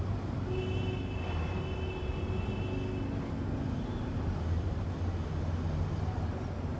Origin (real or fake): real